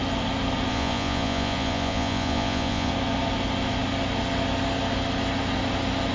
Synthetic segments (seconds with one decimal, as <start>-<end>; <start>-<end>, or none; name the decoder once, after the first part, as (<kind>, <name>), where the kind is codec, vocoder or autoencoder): 0.7-2.9 (vocoder, Vocos)